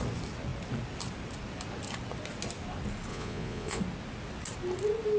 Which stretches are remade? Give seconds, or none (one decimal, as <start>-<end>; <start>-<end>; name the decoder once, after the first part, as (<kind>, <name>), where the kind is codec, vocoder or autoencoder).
3.1-3.8 (vocoder, Vocos)